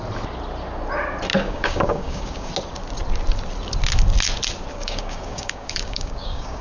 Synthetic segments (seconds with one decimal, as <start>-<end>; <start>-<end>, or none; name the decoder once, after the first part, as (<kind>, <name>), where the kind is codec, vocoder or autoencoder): 1.3-2.5 (codec, DAC); 4.7-6.6